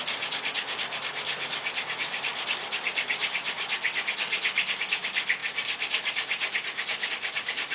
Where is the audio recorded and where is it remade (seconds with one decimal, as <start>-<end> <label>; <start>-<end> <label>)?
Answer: 0.0-7.7 recorded